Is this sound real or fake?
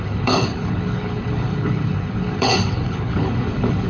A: fake